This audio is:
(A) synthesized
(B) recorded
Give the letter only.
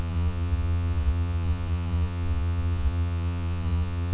A